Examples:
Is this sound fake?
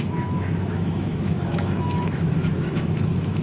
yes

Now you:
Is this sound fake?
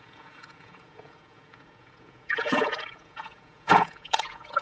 yes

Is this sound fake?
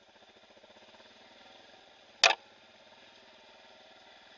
no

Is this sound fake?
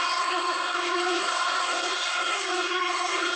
yes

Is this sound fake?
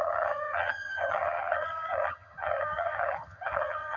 yes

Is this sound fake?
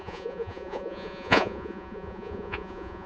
yes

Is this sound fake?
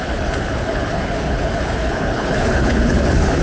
yes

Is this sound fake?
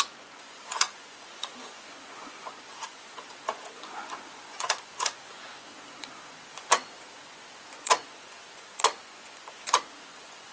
yes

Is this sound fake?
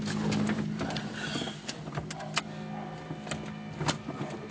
no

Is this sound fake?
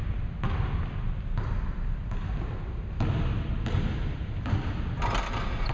no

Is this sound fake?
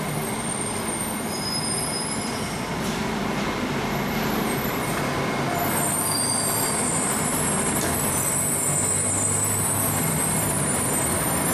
no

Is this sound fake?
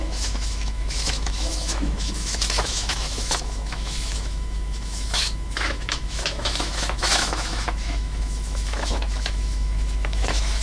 yes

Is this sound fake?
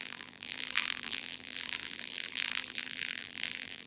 yes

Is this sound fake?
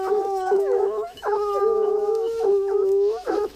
yes